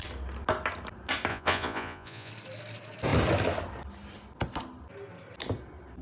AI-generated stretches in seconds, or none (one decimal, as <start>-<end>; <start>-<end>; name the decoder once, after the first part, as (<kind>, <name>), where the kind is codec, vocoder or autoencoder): 1.3-2.3 (vocoder, Vocos)